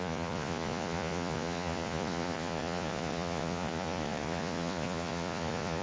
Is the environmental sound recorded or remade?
remade